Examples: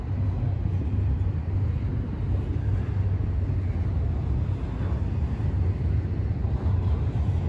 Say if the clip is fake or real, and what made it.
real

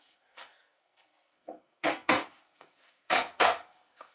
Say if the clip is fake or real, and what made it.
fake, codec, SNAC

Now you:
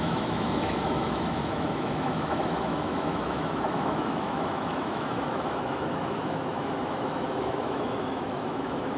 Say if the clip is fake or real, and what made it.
fake, autoencoder, DAC-VAE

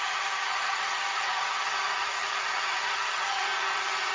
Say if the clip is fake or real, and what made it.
fake, vocoder, HiFi-GAN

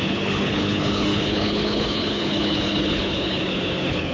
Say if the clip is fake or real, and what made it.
fake, codec, HILCodec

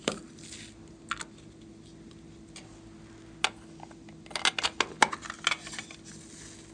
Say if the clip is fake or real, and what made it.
real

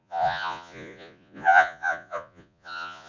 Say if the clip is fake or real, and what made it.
fake, vocoder, Vocos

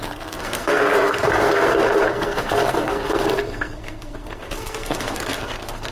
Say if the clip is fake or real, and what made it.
fake, codec, SNAC